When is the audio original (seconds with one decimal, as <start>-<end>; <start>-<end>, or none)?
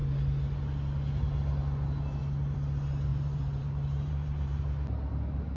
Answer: 0.0-3.1; 4.6-5.6